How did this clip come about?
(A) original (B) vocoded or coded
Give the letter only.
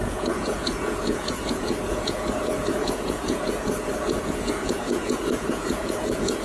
B